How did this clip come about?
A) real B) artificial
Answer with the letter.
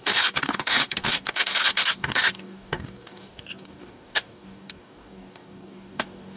B